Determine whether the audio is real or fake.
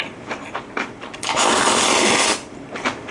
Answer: real